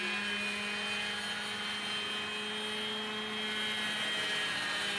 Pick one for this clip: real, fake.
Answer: real